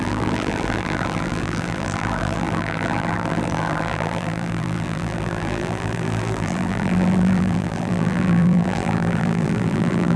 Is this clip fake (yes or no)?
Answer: yes